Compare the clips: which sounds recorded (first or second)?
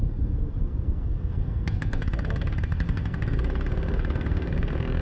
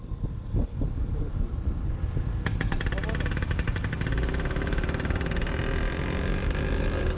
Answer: second